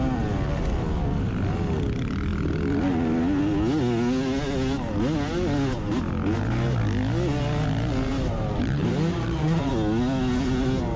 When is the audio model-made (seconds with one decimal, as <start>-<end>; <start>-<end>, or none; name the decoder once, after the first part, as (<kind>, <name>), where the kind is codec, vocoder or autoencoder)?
8.1-9.7 (vocoder, BigVGAN v2)